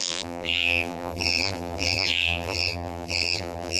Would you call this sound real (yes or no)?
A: no